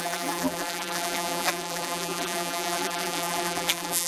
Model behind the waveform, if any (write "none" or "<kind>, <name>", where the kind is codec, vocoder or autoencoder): vocoder, BigVGAN v2